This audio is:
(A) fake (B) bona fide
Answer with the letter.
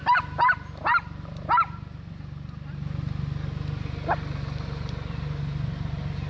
B